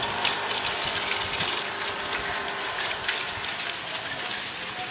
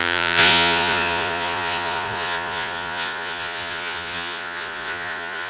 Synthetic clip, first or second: second